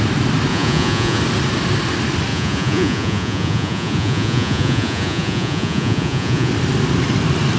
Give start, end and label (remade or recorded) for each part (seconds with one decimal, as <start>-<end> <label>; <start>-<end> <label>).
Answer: 0.0-0.5 recorded; 0.5-1.2 remade; 1.2-2.3 recorded; 2.3-6.5 remade; 6.5-7.6 recorded